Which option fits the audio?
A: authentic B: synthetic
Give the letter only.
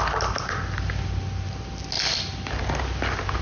A